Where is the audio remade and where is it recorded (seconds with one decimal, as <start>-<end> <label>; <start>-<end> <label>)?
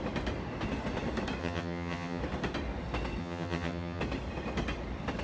0.0-1.4 recorded; 1.4-2.2 remade; 2.2-3.2 recorded; 3.2-4.0 remade; 4.0-5.2 recorded